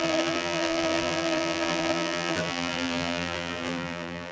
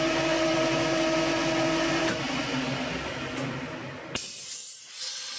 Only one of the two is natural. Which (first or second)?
second